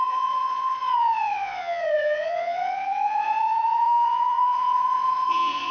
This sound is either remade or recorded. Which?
remade